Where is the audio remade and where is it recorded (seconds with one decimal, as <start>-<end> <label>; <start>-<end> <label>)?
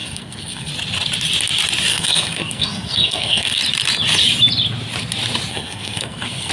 0.0-0.7 remade; 0.7-1.9 recorded; 1.9-3.6 remade; 3.6-5.5 recorded; 5.5-6.5 remade